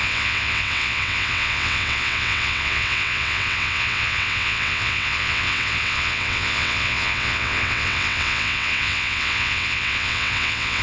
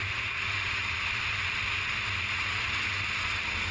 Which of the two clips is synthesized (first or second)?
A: first